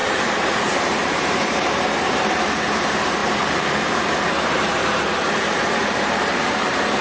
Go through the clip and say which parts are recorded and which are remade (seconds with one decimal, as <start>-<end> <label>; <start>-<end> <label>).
0.0-7.0 remade